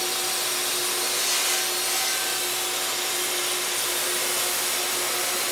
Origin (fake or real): real